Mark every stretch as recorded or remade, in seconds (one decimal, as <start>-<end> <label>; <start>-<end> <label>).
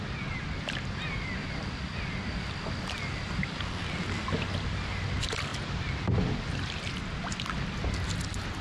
0.0-8.6 recorded